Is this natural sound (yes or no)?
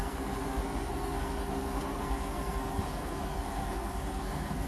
no